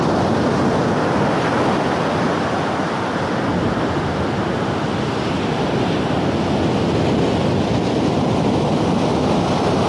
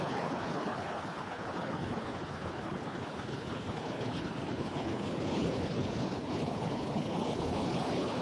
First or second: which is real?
first